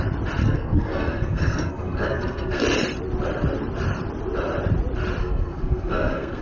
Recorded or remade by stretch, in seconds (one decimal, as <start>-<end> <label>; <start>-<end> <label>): 0.0-0.4 recorded; 0.4-2.6 remade; 2.6-5.2 recorded; 5.2-6.4 remade